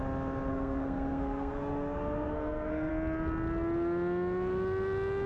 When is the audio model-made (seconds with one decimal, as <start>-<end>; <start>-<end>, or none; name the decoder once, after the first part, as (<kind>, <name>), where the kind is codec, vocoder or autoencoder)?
0.5-2.9 (codec, SNAC)

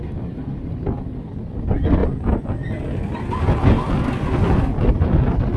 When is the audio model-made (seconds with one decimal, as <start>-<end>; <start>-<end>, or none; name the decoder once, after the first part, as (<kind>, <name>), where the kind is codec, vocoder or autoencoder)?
none

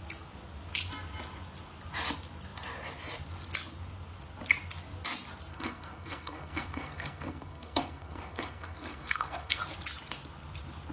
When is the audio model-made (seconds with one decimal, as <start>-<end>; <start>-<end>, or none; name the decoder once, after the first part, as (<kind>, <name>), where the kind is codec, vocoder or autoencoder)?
5.5-9.6 (codec, SNAC)

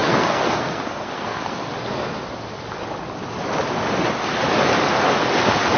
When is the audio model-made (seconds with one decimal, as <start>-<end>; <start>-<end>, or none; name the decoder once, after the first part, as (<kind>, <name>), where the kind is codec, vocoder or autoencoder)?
0.0-1.7 (codec, SNAC)

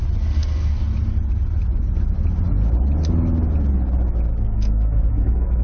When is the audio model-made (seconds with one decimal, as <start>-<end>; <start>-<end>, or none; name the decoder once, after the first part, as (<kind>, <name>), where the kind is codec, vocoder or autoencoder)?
4.4-5.6 (codec, SNAC)

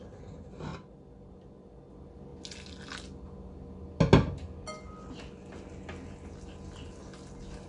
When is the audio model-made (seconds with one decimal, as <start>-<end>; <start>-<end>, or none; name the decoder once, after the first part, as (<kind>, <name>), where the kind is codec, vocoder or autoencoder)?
none

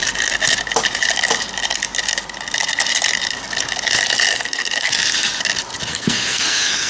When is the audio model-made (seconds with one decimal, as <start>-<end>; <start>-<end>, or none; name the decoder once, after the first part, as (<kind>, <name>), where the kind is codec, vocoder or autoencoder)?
4.3-4.9 (codec, SNAC); 5.9-6.9

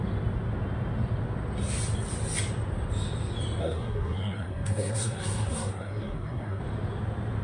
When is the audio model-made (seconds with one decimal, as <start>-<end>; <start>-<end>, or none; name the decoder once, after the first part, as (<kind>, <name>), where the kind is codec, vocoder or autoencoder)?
3.6-6.6 (codec, SNAC)